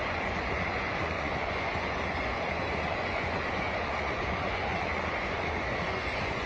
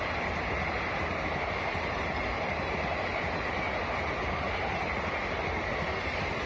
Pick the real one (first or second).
second